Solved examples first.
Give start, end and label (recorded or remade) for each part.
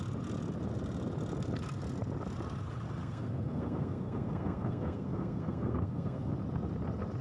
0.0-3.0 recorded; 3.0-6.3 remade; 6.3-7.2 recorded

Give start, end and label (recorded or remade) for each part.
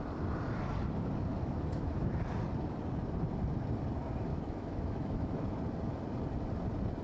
0.0-1.3 recorded; 1.3-2.1 remade; 2.1-4.3 recorded; 4.3-5.6 remade; 5.6-7.0 recorded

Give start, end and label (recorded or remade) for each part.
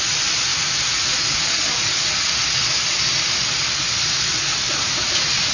0.0-5.5 recorded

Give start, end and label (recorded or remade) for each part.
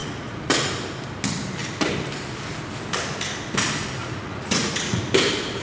0.0-0.7 remade; 0.7-4.0 recorded; 4.0-5.0 remade; 5.0-5.6 recorded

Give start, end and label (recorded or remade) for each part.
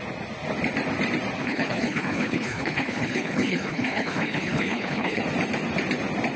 0.0-1.4 recorded; 1.4-5.2 remade; 5.2-6.4 recorded